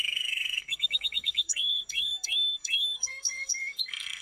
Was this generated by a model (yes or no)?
yes